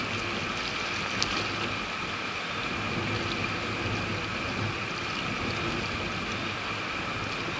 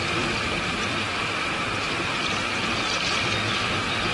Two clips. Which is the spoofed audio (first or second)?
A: second